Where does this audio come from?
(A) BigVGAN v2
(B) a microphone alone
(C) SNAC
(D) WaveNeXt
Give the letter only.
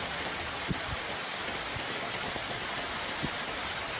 B